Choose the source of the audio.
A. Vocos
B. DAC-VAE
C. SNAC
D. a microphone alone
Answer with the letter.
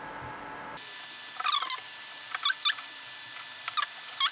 D